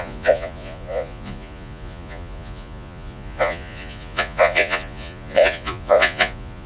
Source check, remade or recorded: remade